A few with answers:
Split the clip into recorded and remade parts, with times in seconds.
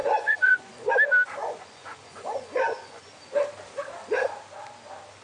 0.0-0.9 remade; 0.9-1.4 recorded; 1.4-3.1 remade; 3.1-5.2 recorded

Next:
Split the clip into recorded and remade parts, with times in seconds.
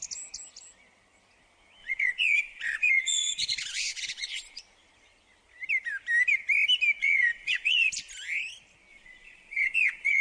0.0-1.8 recorded; 1.8-4.6 remade; 4.6-7.0 recorded; 7.0-7.9 remade; 7.9-8.9 recorded; 8.9-10.2 remade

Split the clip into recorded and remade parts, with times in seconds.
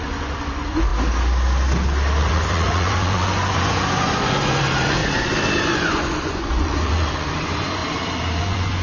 0.0-0.9 remade; 0.9-2.2 recorded; 2.2-5.0 remade; 5.0-5.6 recorded; 5.6-7.8 remade; 7.8-8.4 recorded; 8.4-8.8 remade